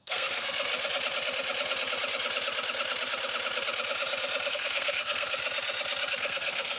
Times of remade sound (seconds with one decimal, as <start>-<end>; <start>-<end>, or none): 0.0-0.7; 4.5-5.4; 6.1-6.8